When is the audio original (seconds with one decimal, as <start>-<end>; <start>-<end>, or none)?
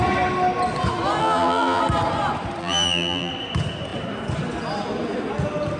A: 0.0-1.2; 1.8-2.6; 3.3-5.8